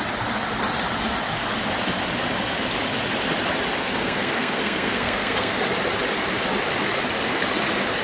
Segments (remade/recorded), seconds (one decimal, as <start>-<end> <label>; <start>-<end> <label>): 0.0-3.8 recorded; 3.8-5.6 remade; 5.6-8.0 recorded

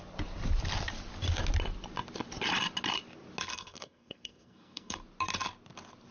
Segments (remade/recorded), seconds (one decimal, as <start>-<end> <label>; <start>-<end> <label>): 0.0-3.5 recorded; 3.5-5.0 remade; 5.0-6.1 recorded